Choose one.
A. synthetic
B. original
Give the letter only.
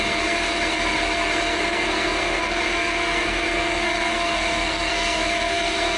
A